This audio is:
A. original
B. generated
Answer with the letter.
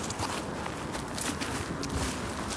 A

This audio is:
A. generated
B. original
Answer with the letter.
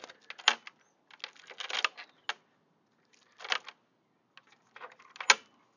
B